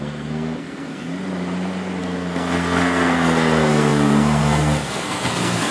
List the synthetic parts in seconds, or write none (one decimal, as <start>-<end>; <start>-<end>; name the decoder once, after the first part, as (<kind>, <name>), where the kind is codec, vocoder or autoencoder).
0.0-1.1 (codec, SNAC); 2.0-5.7